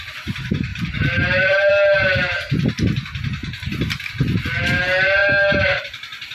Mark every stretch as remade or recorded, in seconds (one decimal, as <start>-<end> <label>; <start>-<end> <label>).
0.0-0.7 recorded; 0.7-1.7 remade; 1.7-5.2 recorded; 5.2-5.8 remade; 5.8-6.3 recorded